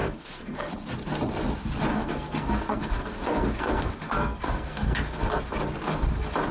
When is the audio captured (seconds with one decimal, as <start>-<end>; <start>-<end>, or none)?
0.7-1.9; 5.4-6.5